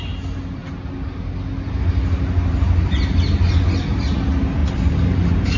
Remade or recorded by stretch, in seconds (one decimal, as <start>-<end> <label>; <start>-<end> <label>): 0.0-5.6 recorded